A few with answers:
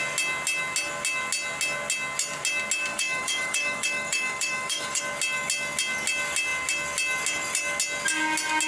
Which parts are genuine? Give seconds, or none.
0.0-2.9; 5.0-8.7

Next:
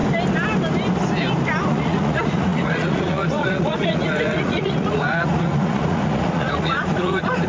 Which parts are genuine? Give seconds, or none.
0.0-1.7

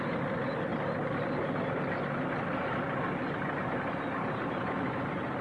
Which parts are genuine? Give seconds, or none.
0.7-3.9

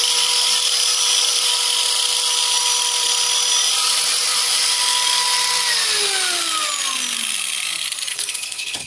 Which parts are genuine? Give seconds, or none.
0.0-8.1

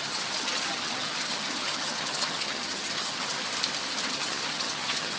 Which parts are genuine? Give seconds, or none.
3.4-4.1

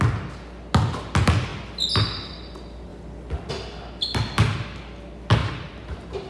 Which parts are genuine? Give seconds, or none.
0.0-5.4